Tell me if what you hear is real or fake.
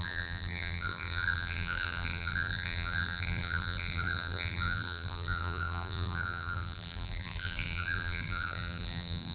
fake